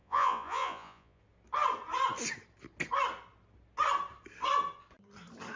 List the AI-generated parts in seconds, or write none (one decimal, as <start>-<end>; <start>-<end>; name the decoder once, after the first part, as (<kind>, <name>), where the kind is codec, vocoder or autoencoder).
0.0-1.2 (vocoder, Vocos)